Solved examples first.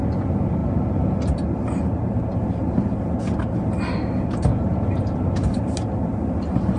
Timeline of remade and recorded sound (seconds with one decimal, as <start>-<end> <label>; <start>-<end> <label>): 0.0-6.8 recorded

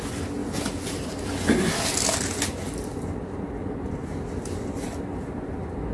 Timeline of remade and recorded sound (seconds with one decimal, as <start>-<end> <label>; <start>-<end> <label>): 0.0-5.9 recorded

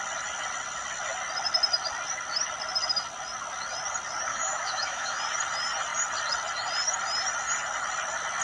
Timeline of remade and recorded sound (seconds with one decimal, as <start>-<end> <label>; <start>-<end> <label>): 0.0-4.3 recorded; 4.3-5.2 remade; 5.2-8.4 recorded